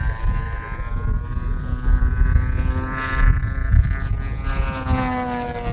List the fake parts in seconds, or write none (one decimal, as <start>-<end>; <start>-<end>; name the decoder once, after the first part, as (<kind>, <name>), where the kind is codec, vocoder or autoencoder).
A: none